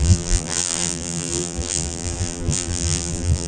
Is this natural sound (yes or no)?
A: no